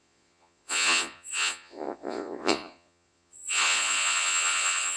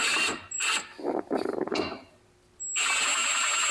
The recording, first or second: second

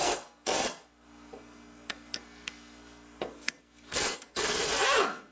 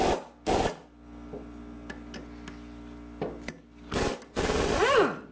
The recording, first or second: second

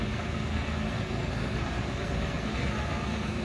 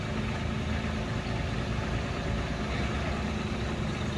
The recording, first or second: second